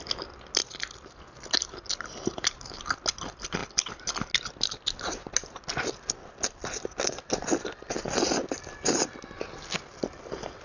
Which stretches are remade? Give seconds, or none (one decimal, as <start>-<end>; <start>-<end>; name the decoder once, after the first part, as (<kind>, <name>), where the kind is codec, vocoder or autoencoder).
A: none